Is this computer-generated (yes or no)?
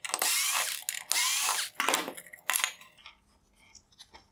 no